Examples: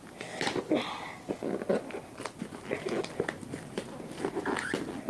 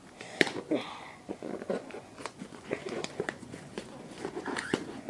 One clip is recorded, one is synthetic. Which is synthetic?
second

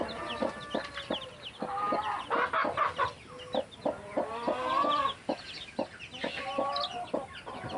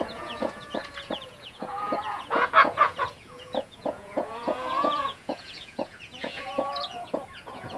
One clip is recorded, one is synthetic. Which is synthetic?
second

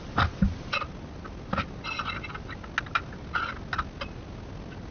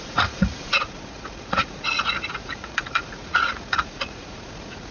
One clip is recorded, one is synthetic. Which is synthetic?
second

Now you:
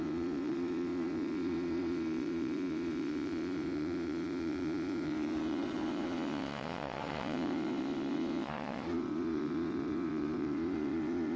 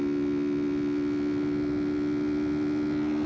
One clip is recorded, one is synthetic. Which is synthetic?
first